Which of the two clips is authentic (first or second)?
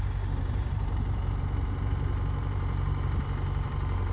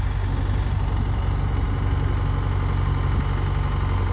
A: second